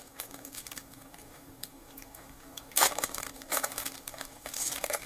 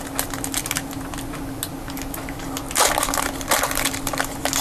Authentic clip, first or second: second